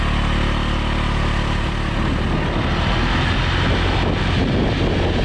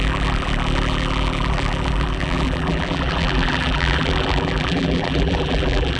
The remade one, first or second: second